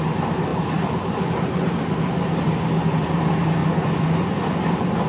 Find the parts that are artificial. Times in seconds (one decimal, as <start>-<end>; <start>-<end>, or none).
3.6-4.6